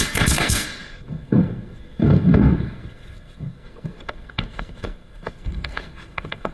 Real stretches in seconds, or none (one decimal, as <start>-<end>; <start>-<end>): none